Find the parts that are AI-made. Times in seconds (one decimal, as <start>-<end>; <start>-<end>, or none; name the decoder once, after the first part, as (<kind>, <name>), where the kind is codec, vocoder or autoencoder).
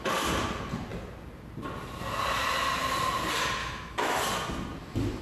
3.6-4.2 (autoencoder, DAC-VAE)